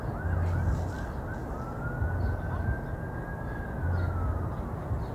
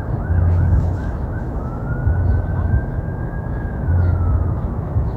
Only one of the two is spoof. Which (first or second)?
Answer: second